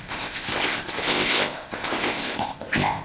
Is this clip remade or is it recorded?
remade